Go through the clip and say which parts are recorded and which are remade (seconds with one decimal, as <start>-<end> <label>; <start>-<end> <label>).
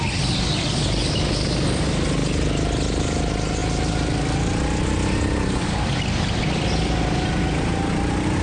0.0-8.4 recorded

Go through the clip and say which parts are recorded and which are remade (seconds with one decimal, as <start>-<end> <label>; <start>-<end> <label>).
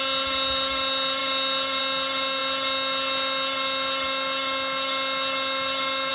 0.0-6.1 recorded